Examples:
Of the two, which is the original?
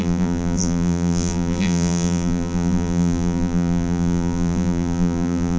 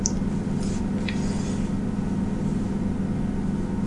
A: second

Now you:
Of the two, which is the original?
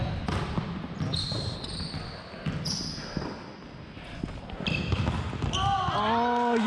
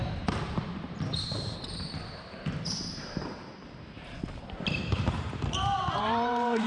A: first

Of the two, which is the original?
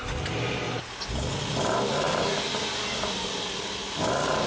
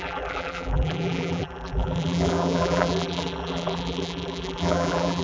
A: first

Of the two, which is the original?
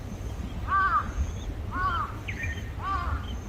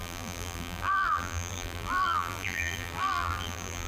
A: first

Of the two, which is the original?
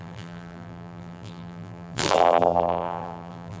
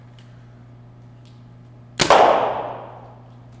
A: second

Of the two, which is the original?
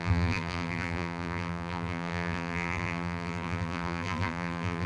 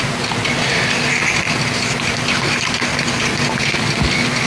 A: second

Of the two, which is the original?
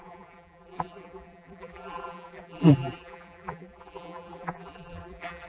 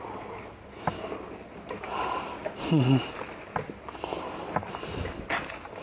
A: second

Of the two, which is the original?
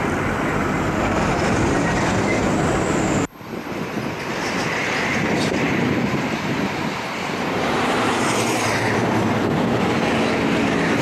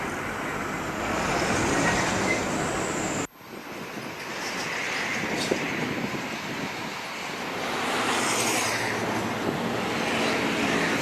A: second